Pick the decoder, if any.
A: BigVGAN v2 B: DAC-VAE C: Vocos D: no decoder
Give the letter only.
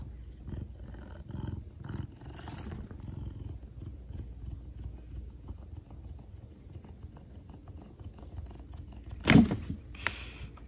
D